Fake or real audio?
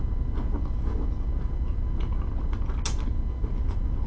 real